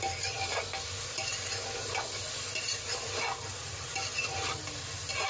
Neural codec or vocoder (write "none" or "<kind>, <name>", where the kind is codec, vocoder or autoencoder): none